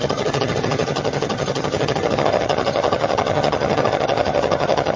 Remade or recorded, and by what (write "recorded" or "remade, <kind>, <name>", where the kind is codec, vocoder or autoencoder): remade, vocoder, HiFi-GAN